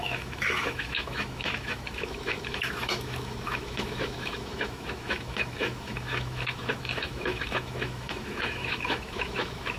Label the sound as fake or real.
fake